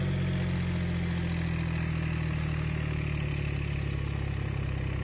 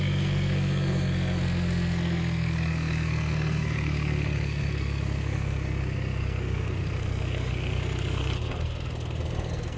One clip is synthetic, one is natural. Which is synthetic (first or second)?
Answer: second